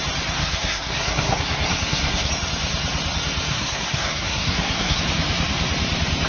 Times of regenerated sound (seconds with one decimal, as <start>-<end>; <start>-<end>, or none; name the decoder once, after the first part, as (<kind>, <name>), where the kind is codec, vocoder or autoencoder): 0.4-2.3 (codec, SNAC); 3.5-5.0